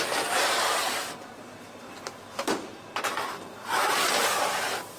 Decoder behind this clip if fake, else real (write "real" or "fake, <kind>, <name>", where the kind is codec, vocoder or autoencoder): fake, vocoder, BigVGAN v2